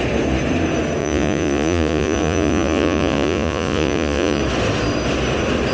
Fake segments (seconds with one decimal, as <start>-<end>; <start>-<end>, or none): 1.0-4.4